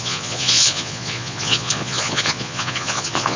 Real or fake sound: fake